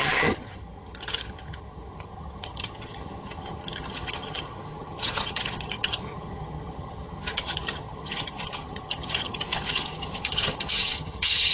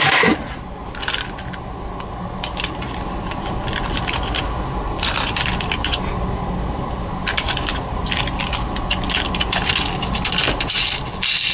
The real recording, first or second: second